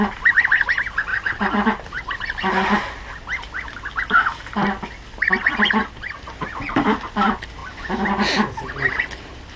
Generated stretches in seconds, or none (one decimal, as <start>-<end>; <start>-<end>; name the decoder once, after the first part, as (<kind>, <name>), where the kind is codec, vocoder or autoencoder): none